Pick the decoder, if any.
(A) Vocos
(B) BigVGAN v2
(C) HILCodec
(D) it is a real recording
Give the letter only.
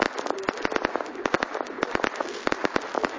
D